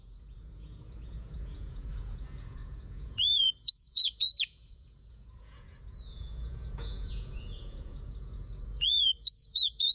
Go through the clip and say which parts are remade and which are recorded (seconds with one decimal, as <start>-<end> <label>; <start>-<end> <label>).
0.0-9.9 remade